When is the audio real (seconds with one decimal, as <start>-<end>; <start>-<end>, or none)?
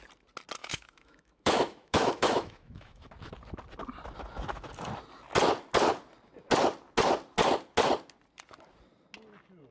0.0-0.6; 3.1-9.7